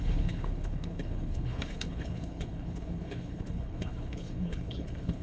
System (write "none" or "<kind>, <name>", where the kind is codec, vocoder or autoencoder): codec, HILCodec